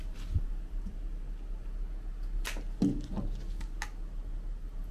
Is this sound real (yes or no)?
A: yes